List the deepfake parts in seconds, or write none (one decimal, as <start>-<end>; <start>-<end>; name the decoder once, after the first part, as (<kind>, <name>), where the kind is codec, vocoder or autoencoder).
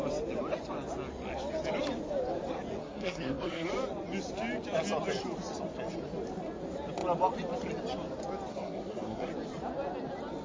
2.8-3.7 (codec, SNAC); 8.5-9.3